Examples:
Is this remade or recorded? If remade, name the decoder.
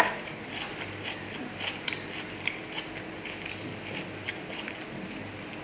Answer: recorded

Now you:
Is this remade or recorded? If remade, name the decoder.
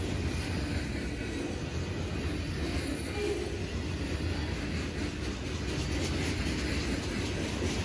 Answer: recorded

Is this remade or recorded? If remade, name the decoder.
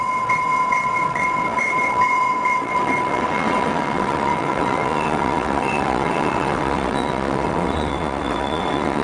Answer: remade, vocoder, WaveNeXt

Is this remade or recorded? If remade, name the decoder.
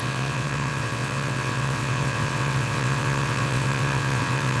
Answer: remade, vocoder, WaveNeXt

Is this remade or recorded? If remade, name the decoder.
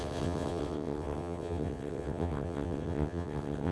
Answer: remade, vocoder, WaveNeXt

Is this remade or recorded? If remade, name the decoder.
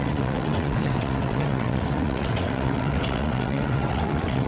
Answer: remade, vocoder, WaveNeXt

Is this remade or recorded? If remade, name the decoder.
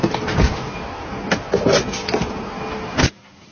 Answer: recorded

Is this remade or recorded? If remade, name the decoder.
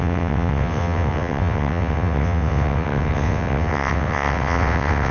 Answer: remade, vocoder, WaveNeXt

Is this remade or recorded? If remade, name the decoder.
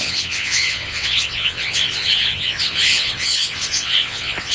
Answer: remade, vocoder, WaveNeXt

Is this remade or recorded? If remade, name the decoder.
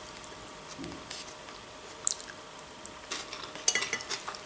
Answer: recorded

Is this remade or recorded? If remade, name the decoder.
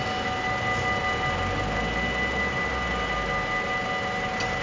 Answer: recorded